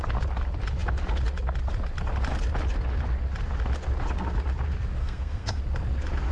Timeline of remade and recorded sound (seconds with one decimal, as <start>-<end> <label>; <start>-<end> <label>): 0.0-5.0 recorded; 5.0-5.6 remade; 5.6-6.3 recorded